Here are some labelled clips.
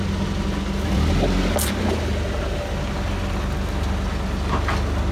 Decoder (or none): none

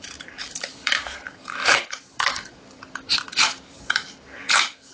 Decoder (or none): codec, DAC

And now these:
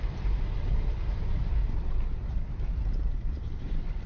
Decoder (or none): vocoder, BigVGAN v2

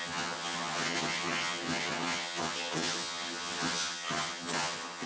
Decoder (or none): vocoder, HiFi-GAN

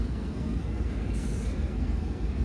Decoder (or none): codec, SNAC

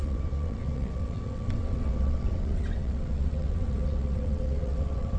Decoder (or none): vocoder, WaveNeXt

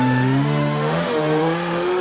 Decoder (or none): autoencoder, DAC-VAE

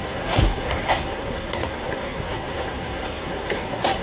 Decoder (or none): codec, SNAC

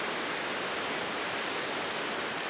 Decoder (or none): none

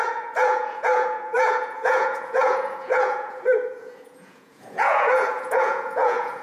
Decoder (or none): vocoder, Vocos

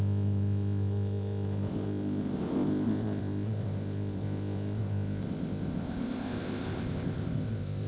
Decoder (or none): codec, ZipCodec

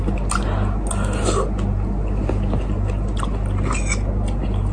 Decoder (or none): none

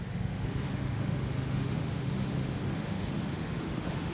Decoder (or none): autoencoder, DAC-VAE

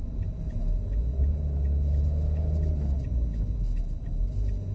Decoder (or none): none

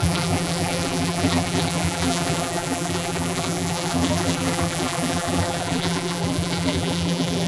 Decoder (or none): vocoder, BigVGAN v2